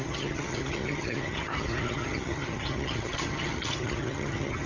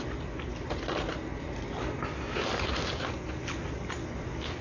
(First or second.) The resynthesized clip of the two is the first